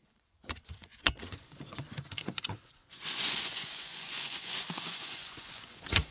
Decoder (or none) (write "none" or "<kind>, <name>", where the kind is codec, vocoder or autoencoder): vocoder, Vocos